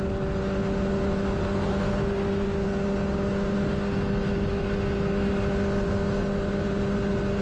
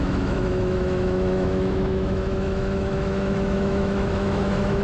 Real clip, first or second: first